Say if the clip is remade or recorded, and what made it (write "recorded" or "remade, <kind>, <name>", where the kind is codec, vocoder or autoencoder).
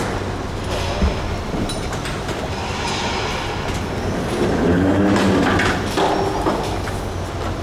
recorded